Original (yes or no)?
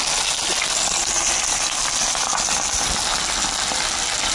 yes